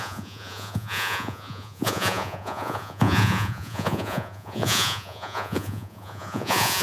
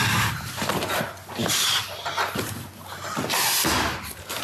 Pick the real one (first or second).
second